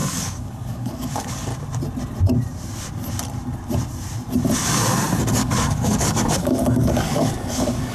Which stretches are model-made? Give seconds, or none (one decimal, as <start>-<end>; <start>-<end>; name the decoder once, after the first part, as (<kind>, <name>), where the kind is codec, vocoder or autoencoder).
0.0-1.5 (codec, DAC); 5.3-7.9